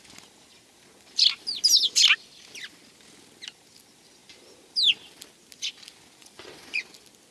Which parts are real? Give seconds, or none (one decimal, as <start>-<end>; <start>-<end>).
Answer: 0.0-6.2; 6.8-7.3